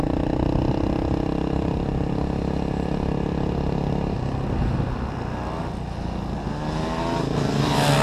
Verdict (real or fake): real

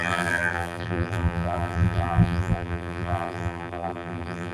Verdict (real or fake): fake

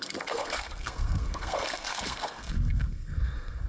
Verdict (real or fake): fake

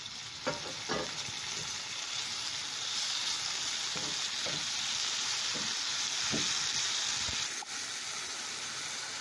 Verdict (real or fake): real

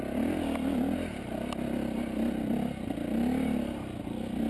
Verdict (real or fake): real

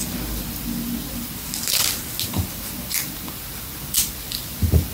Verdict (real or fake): fake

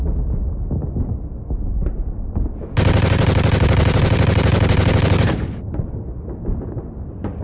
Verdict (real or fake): real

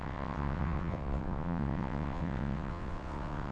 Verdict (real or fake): fake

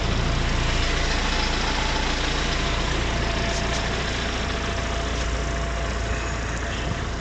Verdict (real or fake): real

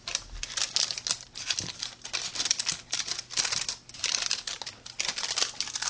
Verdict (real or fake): real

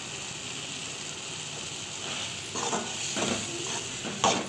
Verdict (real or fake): real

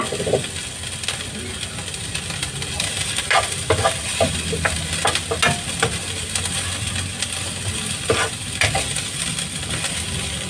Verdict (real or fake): real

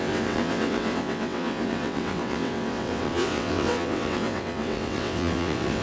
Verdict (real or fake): fake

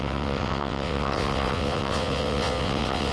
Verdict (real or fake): fake